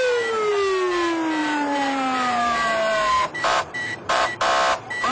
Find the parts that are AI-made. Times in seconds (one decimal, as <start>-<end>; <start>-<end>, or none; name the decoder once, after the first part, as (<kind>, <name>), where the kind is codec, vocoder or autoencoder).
1.4-4.5 (vocoder, BigVGAN v2)